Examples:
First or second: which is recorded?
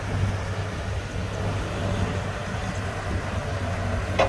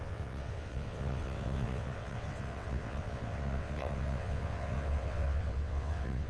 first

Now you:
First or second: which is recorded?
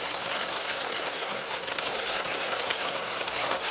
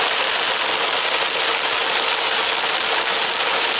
second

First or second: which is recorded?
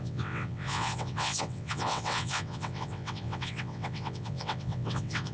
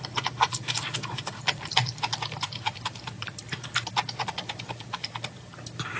second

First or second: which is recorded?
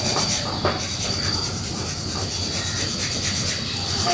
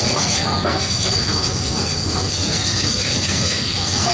first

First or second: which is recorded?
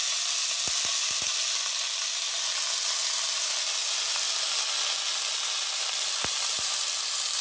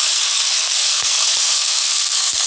first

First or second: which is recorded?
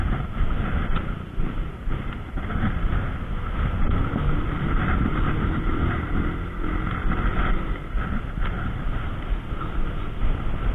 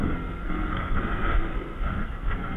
first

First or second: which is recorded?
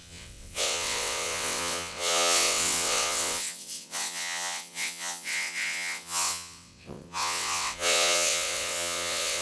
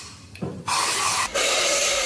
second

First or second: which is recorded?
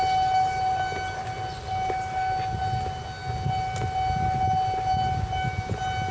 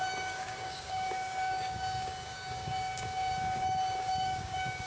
first